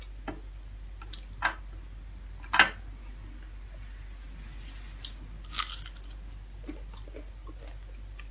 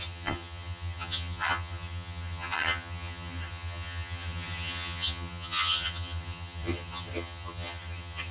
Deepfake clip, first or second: second